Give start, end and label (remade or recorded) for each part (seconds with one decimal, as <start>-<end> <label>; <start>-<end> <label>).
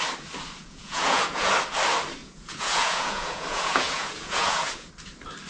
0.0-0.6 recorded; 0.6-1.5 remade; 1.5-2.2 recorded; 2.2-4.9 remade; 4.9-5.5 recorded